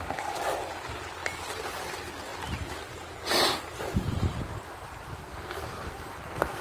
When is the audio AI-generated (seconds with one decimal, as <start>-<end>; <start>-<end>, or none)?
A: 5.2-6.6